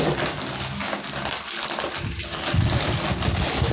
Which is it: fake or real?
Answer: real